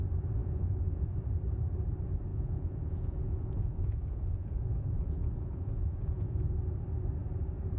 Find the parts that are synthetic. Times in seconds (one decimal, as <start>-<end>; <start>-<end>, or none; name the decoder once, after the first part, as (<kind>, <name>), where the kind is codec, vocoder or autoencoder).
0.4-1.1 (vocoder, Vocos); 2.3-6.4